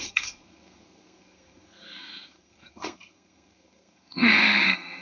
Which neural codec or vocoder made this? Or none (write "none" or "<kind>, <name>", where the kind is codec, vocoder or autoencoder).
codec, SNAC